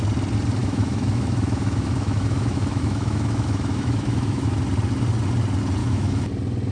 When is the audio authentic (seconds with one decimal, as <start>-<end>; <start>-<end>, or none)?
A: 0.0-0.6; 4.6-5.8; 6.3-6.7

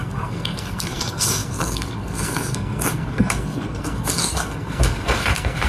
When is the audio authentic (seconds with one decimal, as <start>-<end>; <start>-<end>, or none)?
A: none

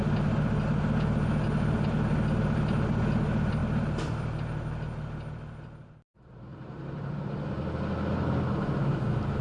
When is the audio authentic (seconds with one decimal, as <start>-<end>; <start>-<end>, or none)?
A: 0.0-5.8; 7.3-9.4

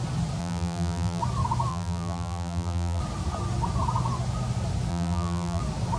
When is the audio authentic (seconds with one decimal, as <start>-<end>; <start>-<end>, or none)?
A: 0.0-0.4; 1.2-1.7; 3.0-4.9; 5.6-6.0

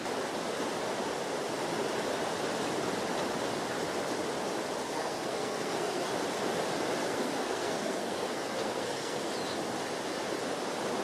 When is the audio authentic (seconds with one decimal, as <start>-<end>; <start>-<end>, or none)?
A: 0.0-4.8; 6.1-7.0; 9.3-11.0

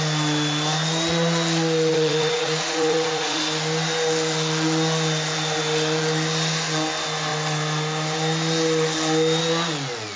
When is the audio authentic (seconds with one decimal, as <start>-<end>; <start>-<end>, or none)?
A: 0.0-1.9; 3.4-10.2